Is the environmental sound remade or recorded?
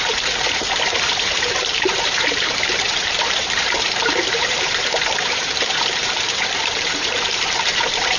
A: remade